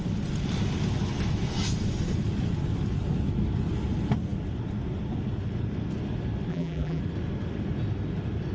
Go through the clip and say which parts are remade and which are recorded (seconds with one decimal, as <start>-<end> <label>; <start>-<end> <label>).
0.0-6.5 recorded; 6.5-7.0 remade; 7.0-8.5 recorded